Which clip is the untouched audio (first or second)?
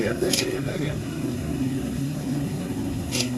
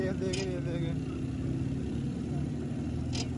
second